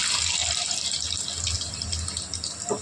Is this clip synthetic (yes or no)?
no